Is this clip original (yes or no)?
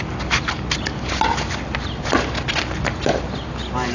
yes